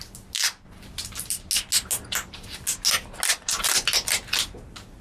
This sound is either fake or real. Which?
real